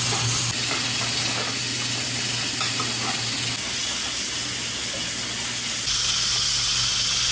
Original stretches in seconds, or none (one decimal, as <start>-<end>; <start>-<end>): 0.0-7.3